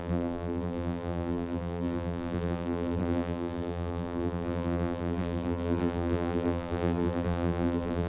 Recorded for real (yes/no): no